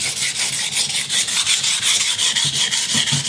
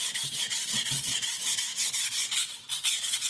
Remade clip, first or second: second